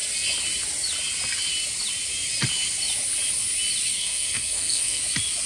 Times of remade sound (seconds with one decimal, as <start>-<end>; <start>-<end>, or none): 3.9-5.0